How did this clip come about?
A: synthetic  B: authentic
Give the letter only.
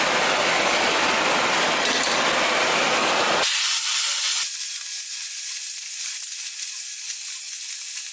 B